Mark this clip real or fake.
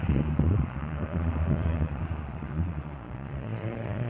fake